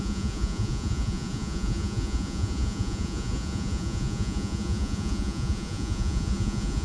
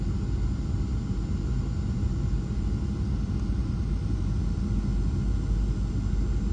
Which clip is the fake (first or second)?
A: first